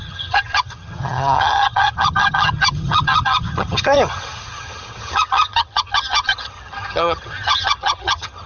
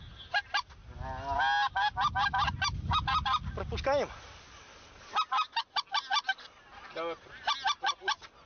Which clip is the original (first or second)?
second